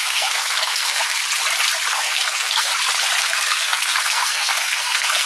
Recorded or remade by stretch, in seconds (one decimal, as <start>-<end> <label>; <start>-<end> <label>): 0.0-1.2 remade; 1.2-1.9 recorded; 1.9-2.7 remade; 2.7-3.2 recorded; 3.2-5.3 remade